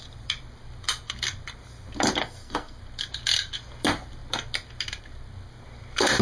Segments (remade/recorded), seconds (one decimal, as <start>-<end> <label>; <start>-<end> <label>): 0.0-2.2 recorded; 2.2-2.8 remade; 2.8-6.2 recorded